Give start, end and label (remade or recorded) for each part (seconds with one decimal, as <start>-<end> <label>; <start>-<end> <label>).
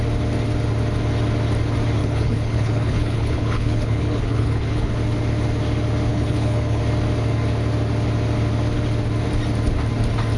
0.0-2.0 recorded; 2.0-4.9 remade; 4.9-6.1 recorded; 6.1-6.8 remade; 6.8-10.4 recorded